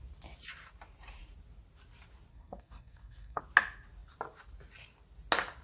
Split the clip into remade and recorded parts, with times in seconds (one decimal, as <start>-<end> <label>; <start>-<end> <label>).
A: 0.0-2.3 recorded; 2.3-3.4 remade; 3.4-5.6 recorded